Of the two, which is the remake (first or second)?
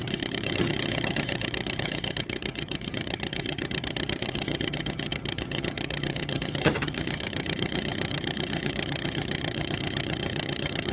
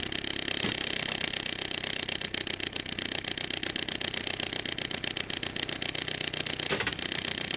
first